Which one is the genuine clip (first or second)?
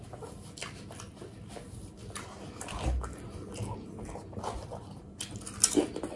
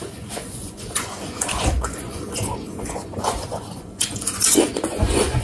first